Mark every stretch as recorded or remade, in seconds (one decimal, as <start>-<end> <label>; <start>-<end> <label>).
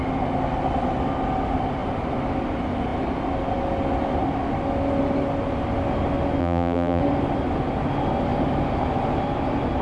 0.0-6.4 recorded; 6.4-7.0 remade; 7.0-9.8 recorded